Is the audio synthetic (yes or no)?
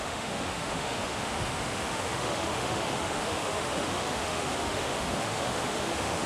yes